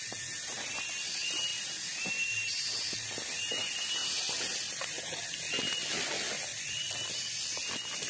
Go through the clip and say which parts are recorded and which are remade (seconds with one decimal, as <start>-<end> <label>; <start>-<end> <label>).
0.0-1.5 recorded; 1.5-2.7 remade; 2.7-3.6 recorded; 3.6-4.1 remade; 4.1-8.1 recorded